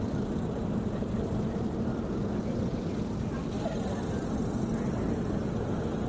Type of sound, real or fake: real